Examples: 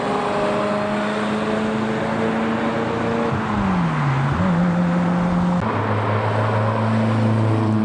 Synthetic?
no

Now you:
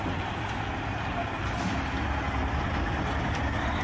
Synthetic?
no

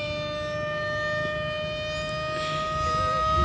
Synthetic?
no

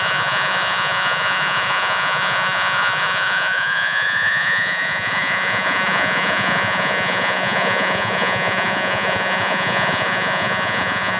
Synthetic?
yes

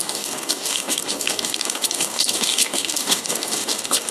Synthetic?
yes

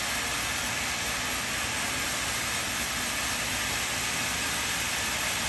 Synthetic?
no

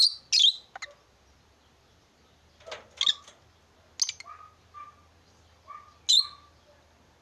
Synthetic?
no